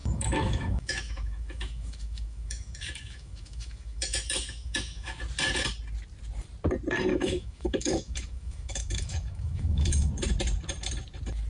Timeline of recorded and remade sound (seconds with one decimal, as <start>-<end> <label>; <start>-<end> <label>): 0.0-5.2 remade; 5.2-7.1 recorded; 7.1-10.1 remade; 10.1-11.5 recorded